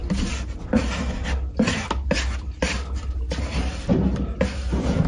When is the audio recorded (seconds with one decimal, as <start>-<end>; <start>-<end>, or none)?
0.0-5.1